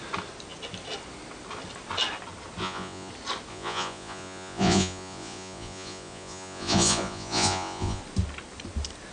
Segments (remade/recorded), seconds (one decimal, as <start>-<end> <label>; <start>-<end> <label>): 0.0-2.6 recorded; 2.6-3.1 remade; 3.1-3.5 recorded; 3.5-8.0 remade; 8.0-9.1 recorded